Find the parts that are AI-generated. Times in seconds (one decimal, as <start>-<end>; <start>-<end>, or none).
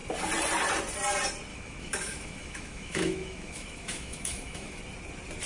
1.5-4.8